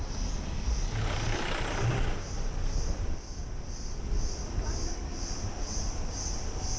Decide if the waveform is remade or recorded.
recorded